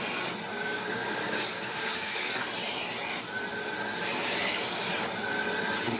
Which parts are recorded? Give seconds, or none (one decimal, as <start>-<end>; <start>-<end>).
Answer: 0.0-0.5; 2.3-4.1; 4.9-6.0